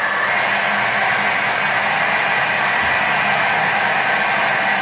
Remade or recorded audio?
recorded